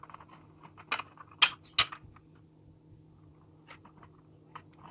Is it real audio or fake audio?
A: real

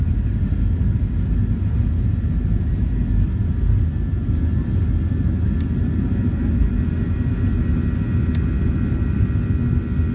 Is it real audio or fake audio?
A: real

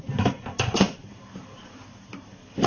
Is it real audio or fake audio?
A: fake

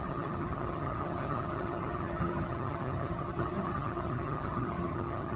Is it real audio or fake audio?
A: fake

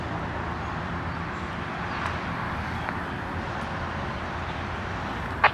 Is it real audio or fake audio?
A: real